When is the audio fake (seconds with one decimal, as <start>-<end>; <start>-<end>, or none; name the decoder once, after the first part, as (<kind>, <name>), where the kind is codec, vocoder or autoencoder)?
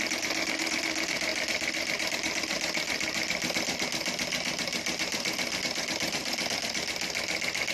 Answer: 1.3-5.6 (vocoder, BigVGAN v2)